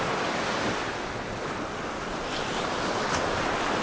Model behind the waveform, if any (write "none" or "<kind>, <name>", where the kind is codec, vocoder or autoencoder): none